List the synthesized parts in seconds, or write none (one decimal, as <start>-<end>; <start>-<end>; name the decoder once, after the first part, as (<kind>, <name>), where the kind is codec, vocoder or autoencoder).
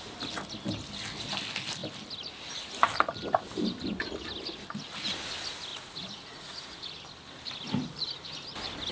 5.7-6.8 (vocoder, Vocos)